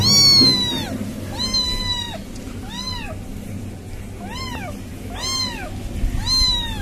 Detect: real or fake real